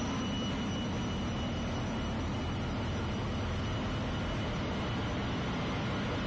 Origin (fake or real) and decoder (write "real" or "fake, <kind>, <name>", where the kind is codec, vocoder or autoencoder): real